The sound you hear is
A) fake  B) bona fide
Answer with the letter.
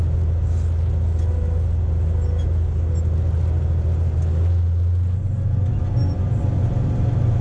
B